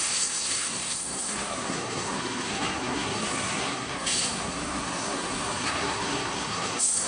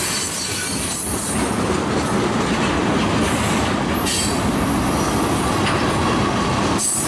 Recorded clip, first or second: second